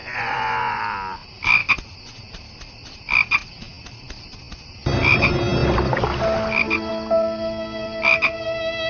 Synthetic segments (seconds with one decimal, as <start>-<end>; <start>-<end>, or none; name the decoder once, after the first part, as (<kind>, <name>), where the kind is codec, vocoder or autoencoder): 0.0-0.8 (vocoder, Vocos)